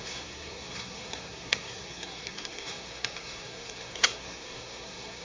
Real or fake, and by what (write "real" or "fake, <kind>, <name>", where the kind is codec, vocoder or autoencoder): fake, codec, SNAC